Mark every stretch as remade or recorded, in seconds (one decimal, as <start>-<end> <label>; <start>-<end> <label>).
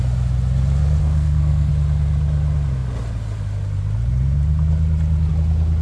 0.0-1.0 recorded; 1.0-1.7 remade; 1.7-5.8 recorded